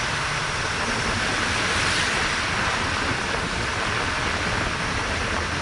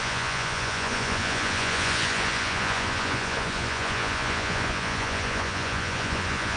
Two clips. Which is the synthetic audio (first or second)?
second